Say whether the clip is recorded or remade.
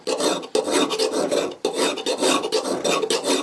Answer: recorded